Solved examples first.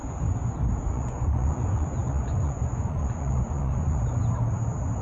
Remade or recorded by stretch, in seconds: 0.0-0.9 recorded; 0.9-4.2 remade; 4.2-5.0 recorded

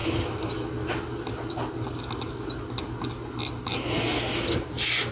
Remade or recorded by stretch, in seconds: 0.0-5.1 recorded

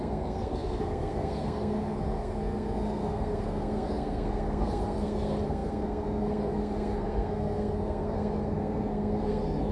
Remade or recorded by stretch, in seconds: 0.0-9.7 remade

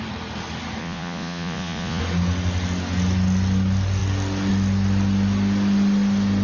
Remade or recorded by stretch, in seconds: 0.0-0.8 recorded; 0.8-2.0 remade; 2.0-6.4 recorded